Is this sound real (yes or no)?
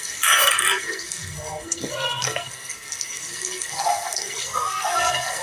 no